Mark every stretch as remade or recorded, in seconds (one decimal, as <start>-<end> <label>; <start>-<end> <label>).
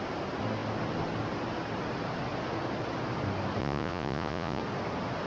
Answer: 0.0-3.6 recorded; 3.6-4.6 remade; 4.6-5.3 recorded